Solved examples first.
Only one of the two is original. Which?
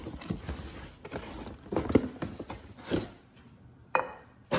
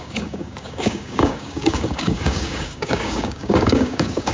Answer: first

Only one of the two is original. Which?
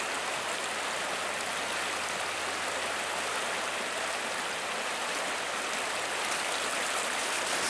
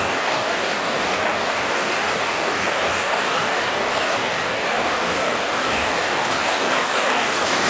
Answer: first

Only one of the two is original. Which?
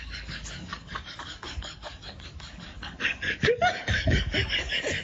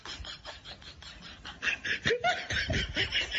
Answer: second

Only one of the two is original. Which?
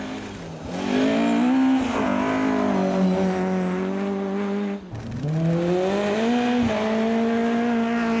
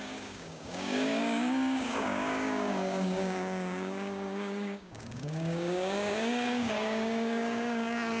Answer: first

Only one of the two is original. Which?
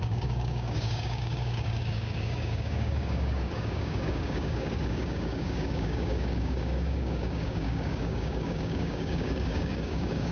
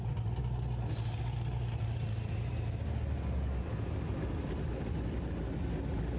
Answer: second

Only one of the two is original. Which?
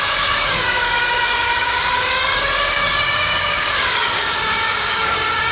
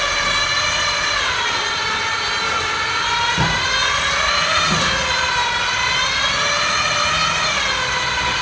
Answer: second